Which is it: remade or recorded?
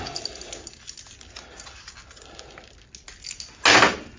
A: recorded